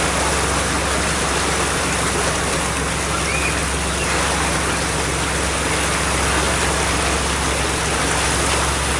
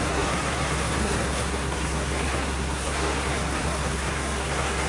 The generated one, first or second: second